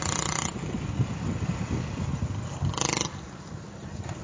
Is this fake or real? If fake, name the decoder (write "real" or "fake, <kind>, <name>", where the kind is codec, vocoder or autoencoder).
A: real